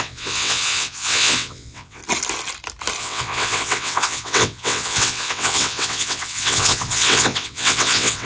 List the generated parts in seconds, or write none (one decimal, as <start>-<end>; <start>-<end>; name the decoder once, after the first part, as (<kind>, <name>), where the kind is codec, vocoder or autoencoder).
0.0-2.0 (vocoder, WaveNeXt); 3.0-8.3